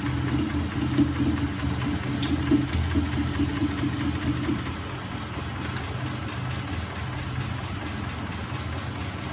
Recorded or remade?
recorded